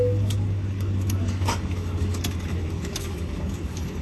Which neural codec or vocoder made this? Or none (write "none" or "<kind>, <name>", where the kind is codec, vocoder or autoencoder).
codec, DAC